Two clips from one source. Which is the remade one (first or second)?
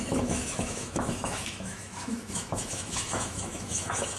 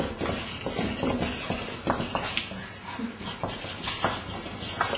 first